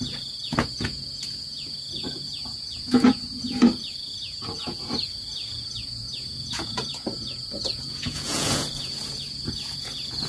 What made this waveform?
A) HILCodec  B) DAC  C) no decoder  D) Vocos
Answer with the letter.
D